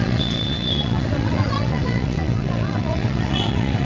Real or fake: fake